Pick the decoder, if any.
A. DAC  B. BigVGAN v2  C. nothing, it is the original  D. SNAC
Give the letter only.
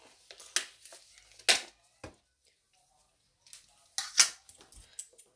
C